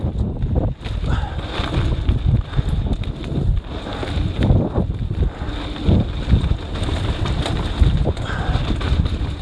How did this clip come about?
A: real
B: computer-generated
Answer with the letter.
A